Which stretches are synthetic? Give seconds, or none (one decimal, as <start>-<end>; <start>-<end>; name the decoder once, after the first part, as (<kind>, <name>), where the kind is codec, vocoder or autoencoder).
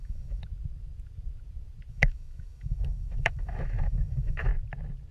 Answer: 0.0-0.4 (autoencoder, DAC-VAE); 1.9-4.5